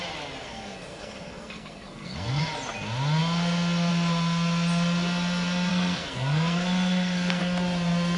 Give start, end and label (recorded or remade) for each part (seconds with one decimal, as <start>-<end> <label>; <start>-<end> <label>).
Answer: 0.0-0.4 recorded; 0.4-2.4 remade; 2.4-5.7 recorded; 5.7-7.4 remade; 7.4-8.2 recorded